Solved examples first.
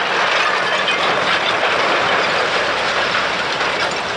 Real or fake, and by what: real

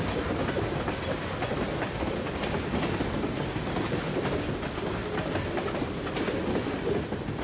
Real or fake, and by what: real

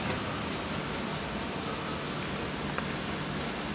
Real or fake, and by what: real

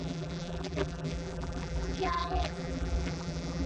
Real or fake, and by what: fake, vocoder, BigVGAN v2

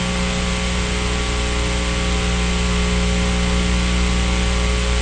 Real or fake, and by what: real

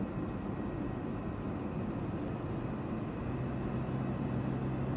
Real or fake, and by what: real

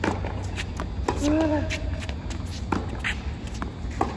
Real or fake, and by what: real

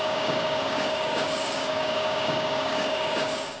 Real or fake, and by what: fake, codec, DAC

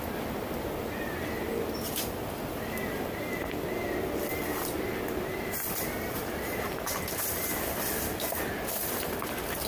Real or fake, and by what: real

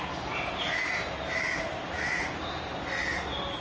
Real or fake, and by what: real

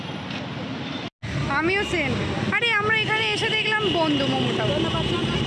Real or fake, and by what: real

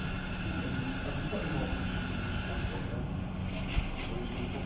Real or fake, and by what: real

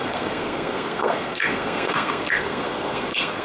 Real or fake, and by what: fake, codec, SNAC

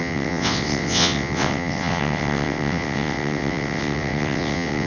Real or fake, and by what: fake, vocoder, WaveNeXt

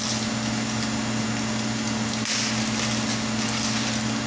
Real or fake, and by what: real